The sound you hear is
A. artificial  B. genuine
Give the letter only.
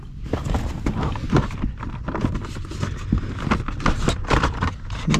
B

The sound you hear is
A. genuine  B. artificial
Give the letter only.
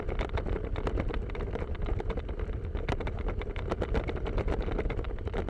A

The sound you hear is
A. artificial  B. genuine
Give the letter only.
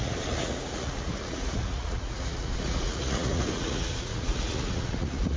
A